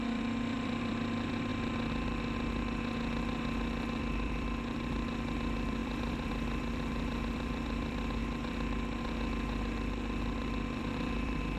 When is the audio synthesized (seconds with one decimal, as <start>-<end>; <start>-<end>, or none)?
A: 0.0-1.5; 4.0-8.2; 10.8-11.6